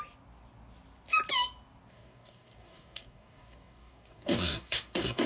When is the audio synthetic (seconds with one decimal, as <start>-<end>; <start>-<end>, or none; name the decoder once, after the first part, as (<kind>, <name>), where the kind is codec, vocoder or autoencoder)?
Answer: 1.9-5.3 (codec, DAC)